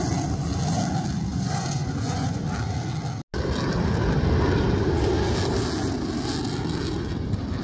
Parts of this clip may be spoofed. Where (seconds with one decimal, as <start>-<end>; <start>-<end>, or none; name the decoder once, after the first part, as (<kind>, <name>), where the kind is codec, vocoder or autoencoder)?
1.3-2.4 (vocoder, Vocos)